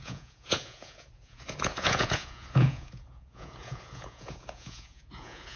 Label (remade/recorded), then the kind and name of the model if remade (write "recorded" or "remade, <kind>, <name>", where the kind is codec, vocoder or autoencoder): remade, vocoder, Vocos